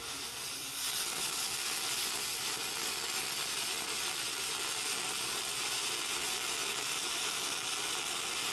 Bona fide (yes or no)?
yes